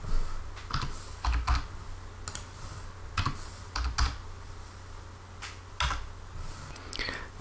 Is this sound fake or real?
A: real